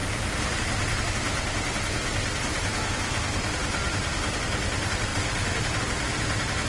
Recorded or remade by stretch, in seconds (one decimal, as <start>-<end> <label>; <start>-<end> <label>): 0.0-3.6 recorded; 3.6-4.4 remade; 4.4-5.1 recorded; 5.1-5.8 remade; 5.8-6.7 recorded